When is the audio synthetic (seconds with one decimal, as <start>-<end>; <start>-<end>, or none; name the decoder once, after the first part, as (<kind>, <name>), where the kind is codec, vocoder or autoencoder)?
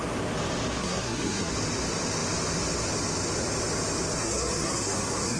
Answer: 0.8-1.5 (codec, SNAC); 4.2-5.4